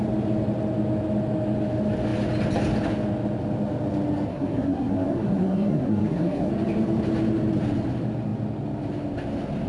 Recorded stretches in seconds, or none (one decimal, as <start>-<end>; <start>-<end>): 0.0-4.3; 6.5-9.7